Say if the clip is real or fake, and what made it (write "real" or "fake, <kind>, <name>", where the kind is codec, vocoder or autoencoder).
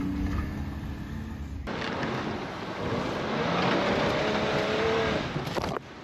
real